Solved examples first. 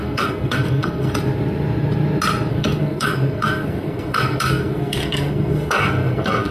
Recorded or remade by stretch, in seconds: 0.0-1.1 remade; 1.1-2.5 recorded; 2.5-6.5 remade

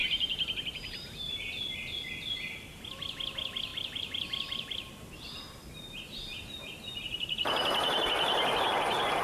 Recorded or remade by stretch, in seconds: 0.0-1.3 remade; 1.3-3.7 recorded; 3.7-4.9 remade; 4.9-6.3 recorded; 6.3-8.1 remade; 8.1-9.2 recorded

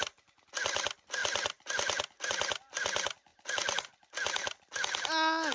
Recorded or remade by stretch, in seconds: 0.0-5.5 recorded

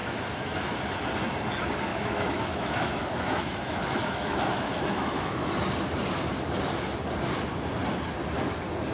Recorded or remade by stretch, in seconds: 0.0-0.8 remade; 0.8-1.9 recorded; 1.9-5.5 remade; 5.5-8.9 recorded

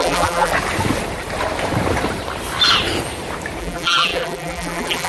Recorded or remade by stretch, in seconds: 0.0-0.5 remade; 0.5-3.6 recorded; 3.6-5.1 remade

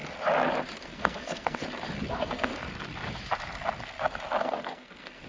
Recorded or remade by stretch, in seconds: 0.0-0.8 recorded; 0.8-1.6 remade; 1.6-2.1 recorded; 2.1-2.5 remade; 2.5-4.4 recorded; 4.4-5.3 remade

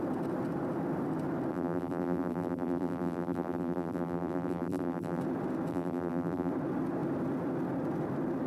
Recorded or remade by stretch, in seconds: 0.0-1.5 recorded; 1.5-5.2 remade; 5.2-5.7 recorded; 5.7-6.5 remade; 6.5-8.5 recorded

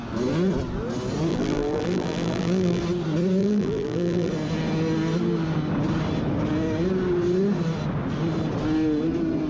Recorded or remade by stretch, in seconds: 0.0-1.3 recorded; 1.3-2.8 remade; 2.8-3.4 recorded; 3.4-4.3 remade; 4.3-9.5 recorded